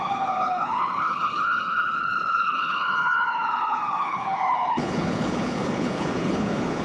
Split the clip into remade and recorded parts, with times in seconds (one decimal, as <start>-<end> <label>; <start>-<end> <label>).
0.0-6.8 remade